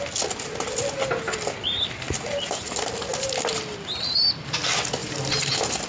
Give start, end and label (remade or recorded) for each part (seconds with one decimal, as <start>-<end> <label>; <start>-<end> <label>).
0.0-3.1 recorded; 3.1-4.2 remade; 4.2-5.0 recorded; 5.0-5.9 remade